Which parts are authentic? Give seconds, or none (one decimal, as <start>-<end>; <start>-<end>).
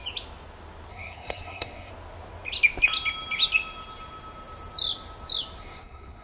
0.0-0.9; 1.9-5.6